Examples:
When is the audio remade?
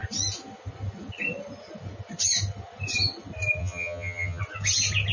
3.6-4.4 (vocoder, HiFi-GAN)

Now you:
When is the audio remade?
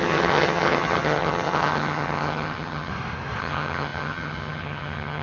0.0-2.9 (vocoder, HiFi-GAN); 3.4-5.2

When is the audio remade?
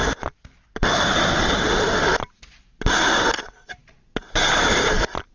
none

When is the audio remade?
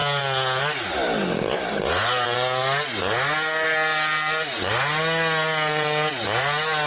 none